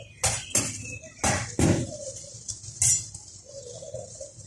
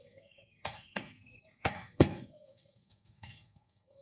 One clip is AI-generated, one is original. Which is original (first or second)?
first